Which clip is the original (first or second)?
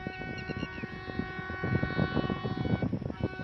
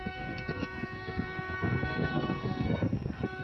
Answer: first